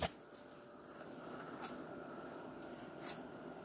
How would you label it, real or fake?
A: real